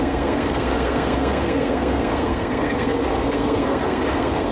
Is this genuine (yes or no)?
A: no